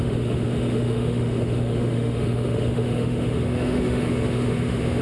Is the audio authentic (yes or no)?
no